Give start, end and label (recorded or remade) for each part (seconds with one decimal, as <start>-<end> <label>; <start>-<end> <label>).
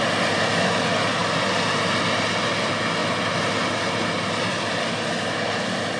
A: 0.0-6.0 recorded